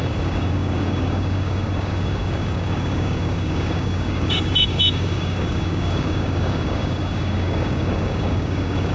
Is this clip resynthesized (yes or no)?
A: yes